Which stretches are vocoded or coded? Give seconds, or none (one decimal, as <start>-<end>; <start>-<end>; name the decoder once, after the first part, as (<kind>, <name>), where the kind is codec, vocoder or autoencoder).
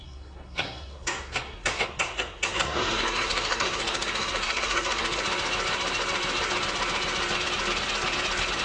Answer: 0.0-5.2 (codec, SNAC)